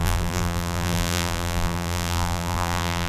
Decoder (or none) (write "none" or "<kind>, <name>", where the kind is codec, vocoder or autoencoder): vocoder, BigVGAN v2